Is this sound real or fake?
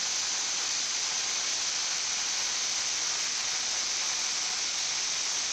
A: real